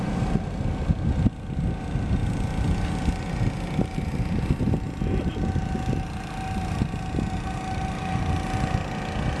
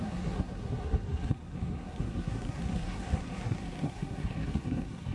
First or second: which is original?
first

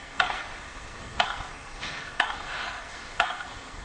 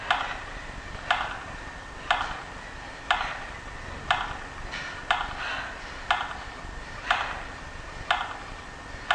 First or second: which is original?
second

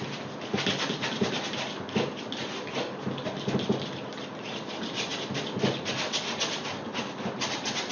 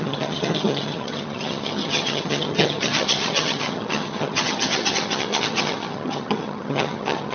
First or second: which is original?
first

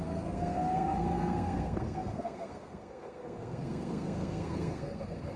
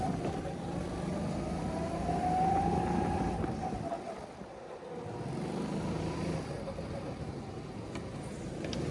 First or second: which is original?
second